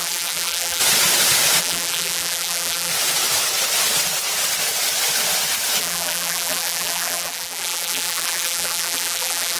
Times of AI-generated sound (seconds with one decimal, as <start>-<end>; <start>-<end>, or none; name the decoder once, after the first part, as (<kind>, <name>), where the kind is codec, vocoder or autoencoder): 0.0-0.8 (vocoder, BigVGAN v2); 1.6-2.9; 5.8-9.6